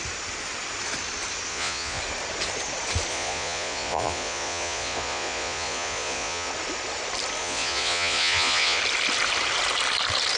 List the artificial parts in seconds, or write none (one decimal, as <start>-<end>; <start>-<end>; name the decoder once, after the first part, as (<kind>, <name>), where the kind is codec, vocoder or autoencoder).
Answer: 1.5-2.0 (vocoder, Vocos); 3.1-6.5; 7.4-8.8